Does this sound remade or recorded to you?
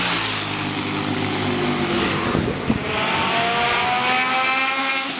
recorded